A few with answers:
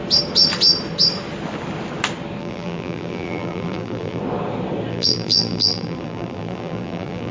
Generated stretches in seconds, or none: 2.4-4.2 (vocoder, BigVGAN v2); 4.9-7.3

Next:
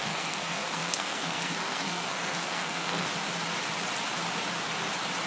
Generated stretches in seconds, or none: 0.0-3.1 (codec, SNAC)

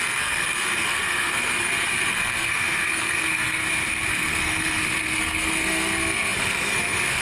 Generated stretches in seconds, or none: 0.0-3.6 (codec, SNAC); 4.1-7.2

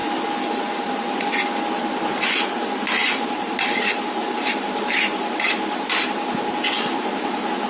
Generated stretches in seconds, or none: 0.0-1.2 (vocoder, BigVGAN v2); 3.0-5.9

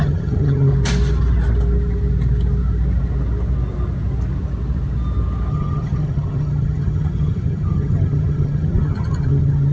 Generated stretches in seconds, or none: 0.0-0.7 (vocoder, HiFi-GAN); 5.5-9.7

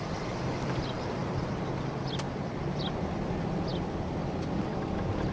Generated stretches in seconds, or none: none

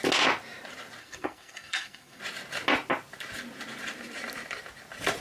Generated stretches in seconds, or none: 1.0-2.2 (codec, SNAC)